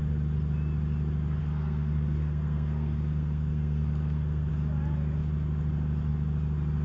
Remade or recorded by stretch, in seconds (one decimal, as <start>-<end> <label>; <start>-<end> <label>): 0.0-1.4 recorded; 1.4-4.5 remade; 4.5-6.8 recorded